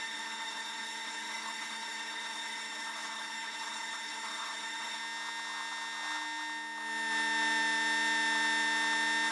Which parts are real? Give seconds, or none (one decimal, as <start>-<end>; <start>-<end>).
5.0-9.3

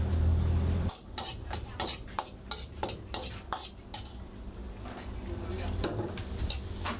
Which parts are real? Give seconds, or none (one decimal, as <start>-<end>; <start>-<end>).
0.0-7.0

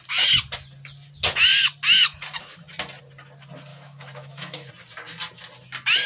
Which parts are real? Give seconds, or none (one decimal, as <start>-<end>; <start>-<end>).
0.0-3.7; 4.7-6.1

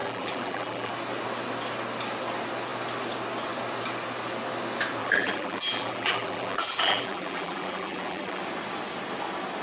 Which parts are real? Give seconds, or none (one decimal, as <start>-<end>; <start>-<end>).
0.9-5.0; 8.4-9.6

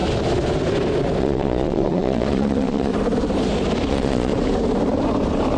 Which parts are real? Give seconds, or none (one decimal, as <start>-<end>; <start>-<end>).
0.0-1.2; 2.9-3.9; 4.3-5.6

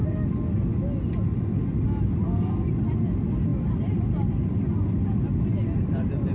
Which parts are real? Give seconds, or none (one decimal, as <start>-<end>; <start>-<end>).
0.0-6.3

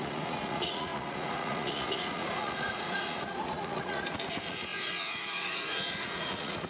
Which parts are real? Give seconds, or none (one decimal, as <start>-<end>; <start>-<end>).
none

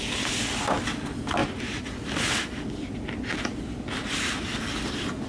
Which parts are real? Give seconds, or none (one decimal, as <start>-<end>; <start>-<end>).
0.0-5.3